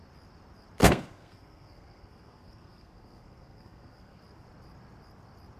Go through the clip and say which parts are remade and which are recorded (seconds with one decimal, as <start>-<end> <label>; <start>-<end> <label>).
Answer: 0.0-0.8 recorded; 0.8-4.2 remade; 4.2-5.6 recorded